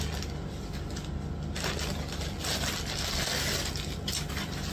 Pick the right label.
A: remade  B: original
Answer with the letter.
B